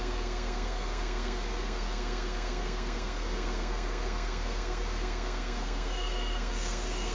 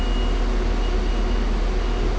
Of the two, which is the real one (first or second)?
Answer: second